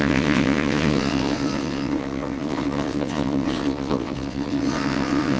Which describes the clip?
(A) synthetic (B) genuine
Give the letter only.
A